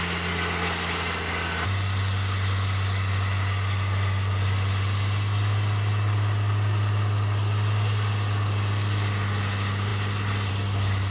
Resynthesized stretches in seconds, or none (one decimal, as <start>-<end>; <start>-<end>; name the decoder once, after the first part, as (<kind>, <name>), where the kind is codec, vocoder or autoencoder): none